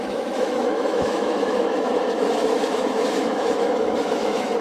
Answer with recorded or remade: remade